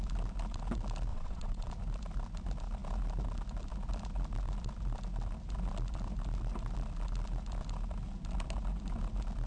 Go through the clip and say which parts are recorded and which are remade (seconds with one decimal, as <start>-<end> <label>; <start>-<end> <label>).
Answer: 0.0-1.1 recorded; 1.1-1.7 remade; 1.7-9.5 recorded